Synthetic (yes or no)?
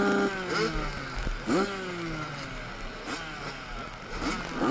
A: no